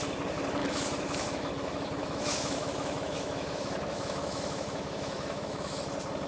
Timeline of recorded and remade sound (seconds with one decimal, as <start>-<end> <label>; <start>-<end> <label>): 0.0-0.6 recorded; 0.6-1.5 remade; 1.5-2.0 recorded; 2.0-5.8 remade; 5.8-6.3 recorded